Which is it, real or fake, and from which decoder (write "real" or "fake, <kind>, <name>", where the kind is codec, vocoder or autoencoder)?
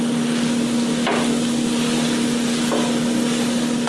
real